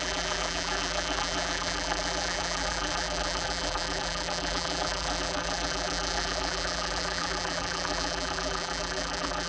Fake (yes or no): yes